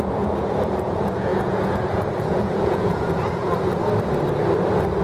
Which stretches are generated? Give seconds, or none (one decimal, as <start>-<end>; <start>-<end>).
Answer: 0.0-3.8